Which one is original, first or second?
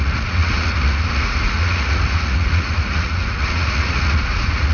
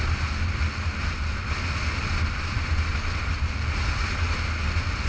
second